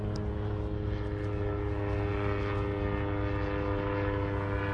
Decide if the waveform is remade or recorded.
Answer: recorded